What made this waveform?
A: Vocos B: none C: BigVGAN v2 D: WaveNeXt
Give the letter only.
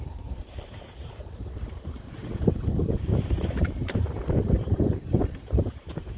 C